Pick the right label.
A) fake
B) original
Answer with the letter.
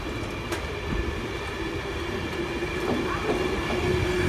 B